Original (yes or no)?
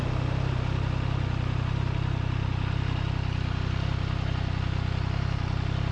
yes